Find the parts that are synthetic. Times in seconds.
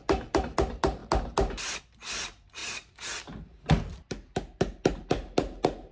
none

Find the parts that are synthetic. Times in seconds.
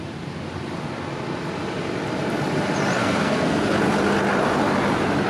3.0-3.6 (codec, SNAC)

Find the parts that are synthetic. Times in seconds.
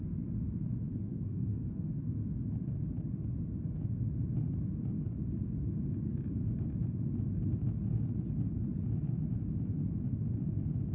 0.9-1.9 (codec, SNAC)